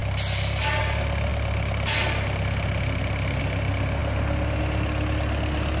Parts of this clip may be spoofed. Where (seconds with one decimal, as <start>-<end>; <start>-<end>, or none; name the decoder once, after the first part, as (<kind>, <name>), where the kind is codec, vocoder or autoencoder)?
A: none